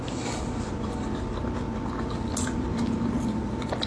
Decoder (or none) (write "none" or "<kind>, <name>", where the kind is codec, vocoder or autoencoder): none